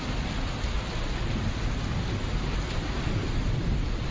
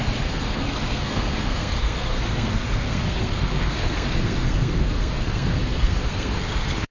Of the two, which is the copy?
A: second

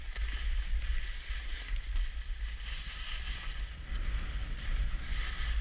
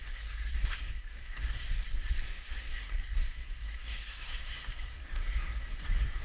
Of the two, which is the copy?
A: second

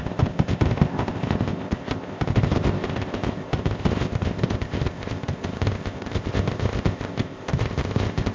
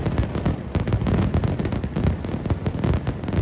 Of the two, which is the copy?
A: first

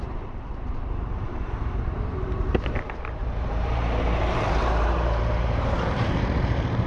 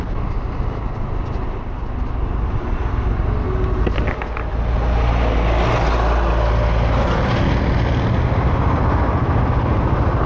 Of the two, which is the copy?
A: first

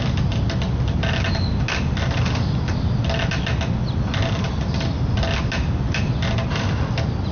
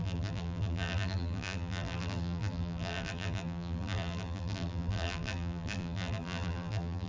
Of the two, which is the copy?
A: second